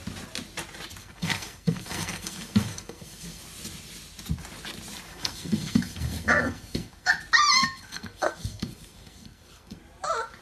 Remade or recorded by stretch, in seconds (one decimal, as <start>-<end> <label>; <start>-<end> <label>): 0.0-1.0 recorded; 1.0-3.4 remade; 3.4-5.1 recorded; 5.1-7.1 remade; 7.1-7.6 recorded; 7.6-9.8 remade; 9.8-10.4 recorded